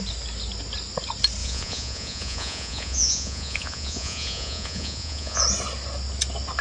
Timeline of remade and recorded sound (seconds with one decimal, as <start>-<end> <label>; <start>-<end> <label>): 0.0-1.4 recorded; 1.4-5.4 remade; 5.4-6.6 recorded

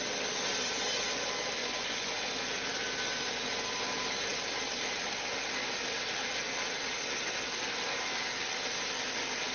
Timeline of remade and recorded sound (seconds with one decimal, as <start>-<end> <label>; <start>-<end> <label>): 0.0-1.6 recorded; 1.6-2.1 remade; 2.1-9.5 recorded

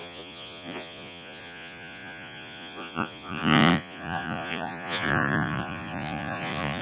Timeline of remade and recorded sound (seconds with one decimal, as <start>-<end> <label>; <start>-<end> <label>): 0.0-6.8 remade

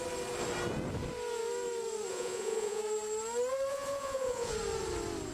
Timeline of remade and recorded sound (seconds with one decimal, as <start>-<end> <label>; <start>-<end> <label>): 0.0-2.1 recorded; 2.1-2.8 remade; 2.8-3.7 recorded; 3.7-4.5 remade; 4.5-5.3 recorded